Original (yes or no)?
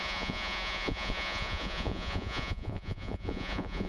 no